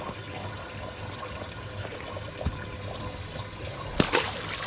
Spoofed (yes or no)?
no